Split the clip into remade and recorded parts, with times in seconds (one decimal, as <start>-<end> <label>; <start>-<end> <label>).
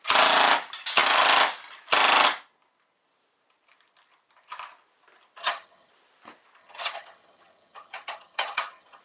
0.0-5.4 recorded; 5.4-5.9 remade; 5.9-6.6 recorded; 6.6-9.0 remade